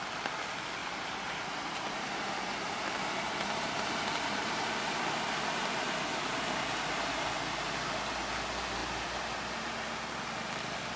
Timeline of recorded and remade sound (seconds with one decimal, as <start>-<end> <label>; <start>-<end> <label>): 0.0-0.8 recorded; 0.8-4.5 remade; 4.5-11.0 recorded